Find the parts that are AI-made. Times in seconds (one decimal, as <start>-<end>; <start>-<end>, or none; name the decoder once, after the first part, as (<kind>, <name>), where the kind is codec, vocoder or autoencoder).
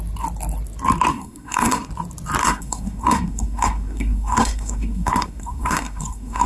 1.1-1.9 (codec, SNAC); 2.4-6.5